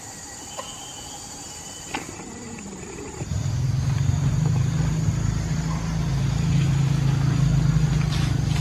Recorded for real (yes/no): yes